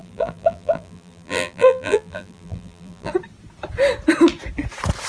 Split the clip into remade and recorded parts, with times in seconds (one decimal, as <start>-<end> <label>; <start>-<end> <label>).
0.0-3.1 remade; 3.1-5.1 recorded